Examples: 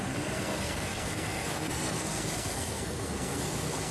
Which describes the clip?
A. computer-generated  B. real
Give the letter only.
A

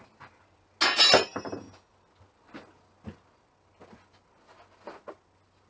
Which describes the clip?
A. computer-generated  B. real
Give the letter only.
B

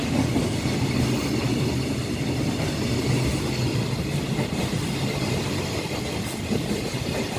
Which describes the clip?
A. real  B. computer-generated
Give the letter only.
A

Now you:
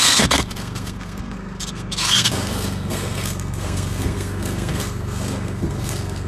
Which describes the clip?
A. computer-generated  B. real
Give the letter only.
A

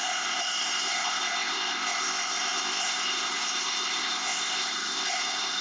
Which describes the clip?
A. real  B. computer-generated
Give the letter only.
B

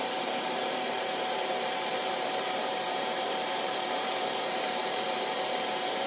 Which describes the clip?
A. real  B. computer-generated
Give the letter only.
B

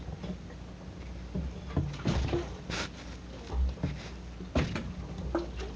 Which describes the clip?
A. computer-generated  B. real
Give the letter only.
B